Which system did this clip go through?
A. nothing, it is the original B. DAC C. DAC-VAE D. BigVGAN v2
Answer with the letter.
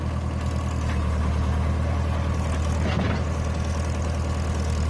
A